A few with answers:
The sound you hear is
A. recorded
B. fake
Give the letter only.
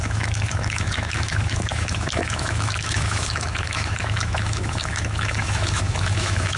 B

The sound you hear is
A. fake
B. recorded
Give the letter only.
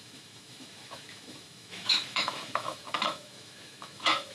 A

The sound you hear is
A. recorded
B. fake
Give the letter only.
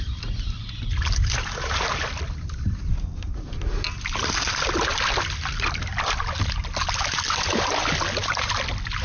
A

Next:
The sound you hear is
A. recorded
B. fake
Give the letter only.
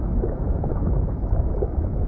B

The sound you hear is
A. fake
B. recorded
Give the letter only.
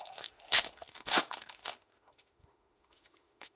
A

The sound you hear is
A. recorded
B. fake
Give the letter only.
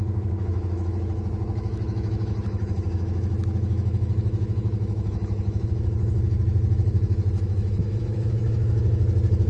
B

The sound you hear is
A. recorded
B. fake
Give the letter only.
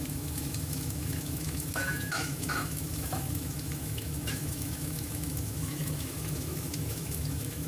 B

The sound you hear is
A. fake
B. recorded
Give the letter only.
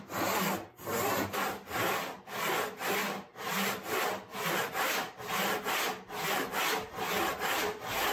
B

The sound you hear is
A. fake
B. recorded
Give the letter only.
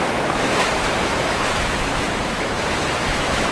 A